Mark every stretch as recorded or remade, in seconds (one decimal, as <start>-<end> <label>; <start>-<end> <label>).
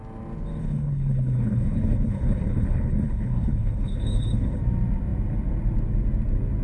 0.0-0.6 recorded; 0.6-4.6 remade; 4.6-6.6 recorded